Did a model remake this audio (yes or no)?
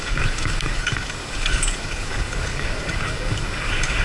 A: yes